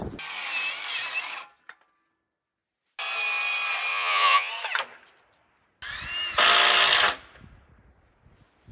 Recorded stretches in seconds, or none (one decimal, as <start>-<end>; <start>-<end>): 0.0-3.9; 4.5-8.7